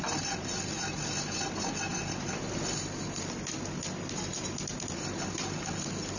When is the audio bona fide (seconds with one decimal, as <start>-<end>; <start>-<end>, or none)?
0.0-6.2